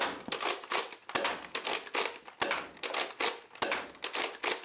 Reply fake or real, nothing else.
real